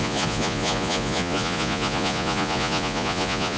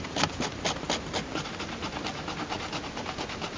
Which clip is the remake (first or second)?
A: first